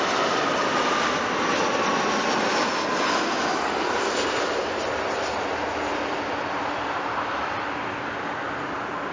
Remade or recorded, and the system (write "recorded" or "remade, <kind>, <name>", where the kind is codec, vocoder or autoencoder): recorded